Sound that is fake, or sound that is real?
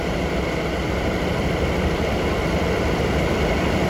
fake